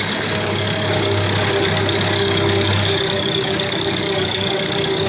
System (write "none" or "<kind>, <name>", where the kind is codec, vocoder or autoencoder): codec, DAC